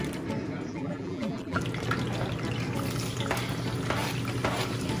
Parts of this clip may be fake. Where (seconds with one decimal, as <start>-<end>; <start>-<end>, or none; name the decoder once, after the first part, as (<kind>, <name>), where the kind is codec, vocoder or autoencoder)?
0.7-1.6 (vocoder, BigVGAN v2)